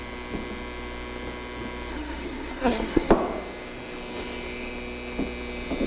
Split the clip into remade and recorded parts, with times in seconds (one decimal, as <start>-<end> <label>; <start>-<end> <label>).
0.0-1.9 recorded; 1.9-3.1 remade; 3.1-5.9 recorded

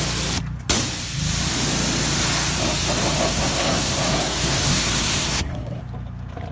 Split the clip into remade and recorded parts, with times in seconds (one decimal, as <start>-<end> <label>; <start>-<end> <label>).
0.0-3.3 recorded; 3.3-5.8 remade; 5.8-6.5 recorded

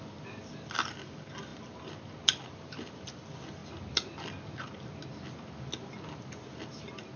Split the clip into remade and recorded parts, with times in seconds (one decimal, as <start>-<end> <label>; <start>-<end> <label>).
0.0-7.2 recorded

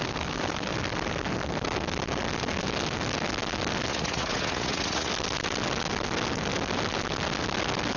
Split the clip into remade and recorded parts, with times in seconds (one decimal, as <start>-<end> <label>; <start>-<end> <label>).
0.0-3.9 recorded; 3.9-5.1 remade; 5.1-8.0 recorded

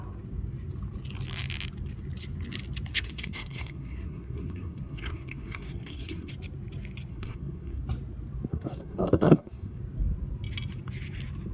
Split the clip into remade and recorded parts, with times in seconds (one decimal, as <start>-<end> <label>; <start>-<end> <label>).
0.0-2.9 recorded; 2.9-6.3 remade; 6.3-7.1 recorded; 7.1-7.8 remade; 7.8-8.5 recorded; 8.5-9.8 remade; 9.8-11.5 recorded

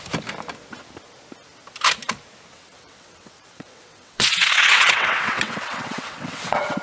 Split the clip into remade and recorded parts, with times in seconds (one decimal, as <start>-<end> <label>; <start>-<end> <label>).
0.0-2.5 recorded; 2.5-6.8 remade

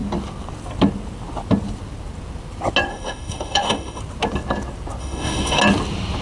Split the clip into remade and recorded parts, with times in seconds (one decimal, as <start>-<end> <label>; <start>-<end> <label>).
0.0-2.9 recorded; 2.9-4.0 remade; 4.0-5.0 recorded; 5.0-5.6 remade; 5.6-6.2 recorded